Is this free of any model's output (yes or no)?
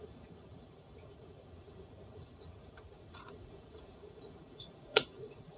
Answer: no